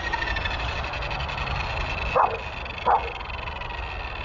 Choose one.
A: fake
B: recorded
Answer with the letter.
B